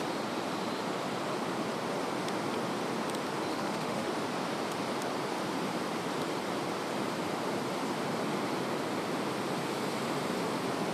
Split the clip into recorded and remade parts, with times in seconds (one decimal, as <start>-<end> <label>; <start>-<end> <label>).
0.0-3.5 recorded; 3.5-4.1 remade; 4.1-10.9 recorded